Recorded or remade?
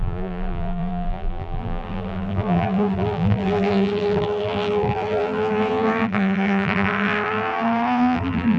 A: remade